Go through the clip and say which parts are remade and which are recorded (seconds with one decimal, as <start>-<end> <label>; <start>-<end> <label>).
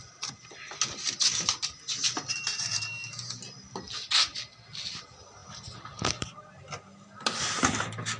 0.0-8.2 recorded